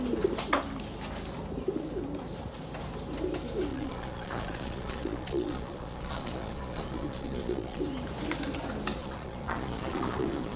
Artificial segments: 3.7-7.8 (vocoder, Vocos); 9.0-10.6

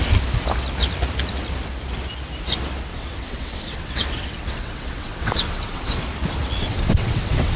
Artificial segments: 2.9-6.0 (vocoder, WaveNeXt); 6.6-7.6

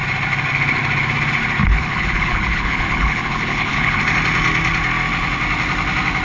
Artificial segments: 1.6-4.0 (codec, HILCodec)